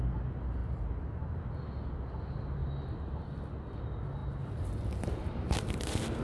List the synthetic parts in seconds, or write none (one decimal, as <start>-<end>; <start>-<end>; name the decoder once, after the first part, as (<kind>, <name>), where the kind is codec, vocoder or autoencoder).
0.6-1.4 (vocoder, BigVGAN v2); 4.2-5.8